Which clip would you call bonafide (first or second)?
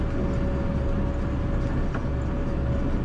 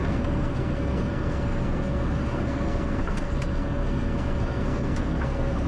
first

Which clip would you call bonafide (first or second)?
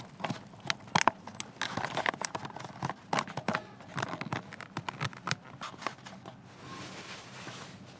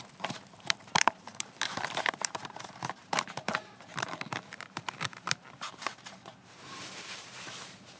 first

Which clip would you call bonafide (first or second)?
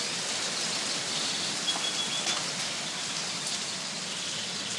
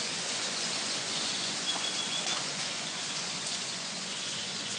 first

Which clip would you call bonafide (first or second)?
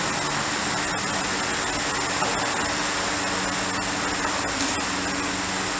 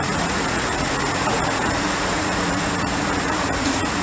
first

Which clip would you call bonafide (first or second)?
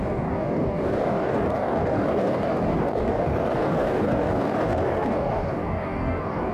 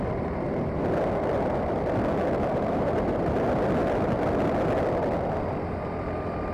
second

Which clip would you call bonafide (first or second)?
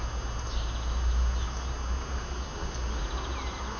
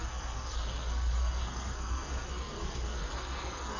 first